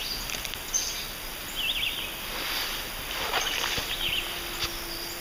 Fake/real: real